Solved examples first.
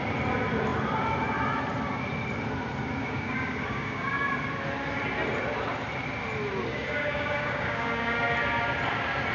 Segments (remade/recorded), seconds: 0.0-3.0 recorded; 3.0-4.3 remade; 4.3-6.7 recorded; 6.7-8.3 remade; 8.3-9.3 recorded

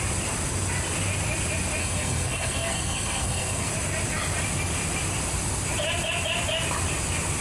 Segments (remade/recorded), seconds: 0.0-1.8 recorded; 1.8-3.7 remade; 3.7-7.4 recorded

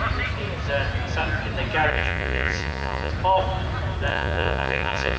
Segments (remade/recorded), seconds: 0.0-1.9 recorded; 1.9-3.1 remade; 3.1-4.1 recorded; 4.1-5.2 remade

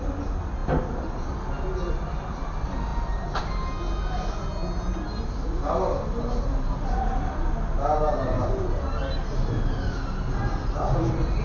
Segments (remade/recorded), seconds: 0.0-11.4 recorded